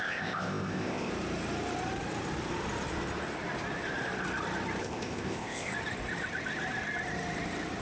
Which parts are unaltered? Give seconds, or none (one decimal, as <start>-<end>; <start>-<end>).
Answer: 1.1-4.8; 5.7-7.8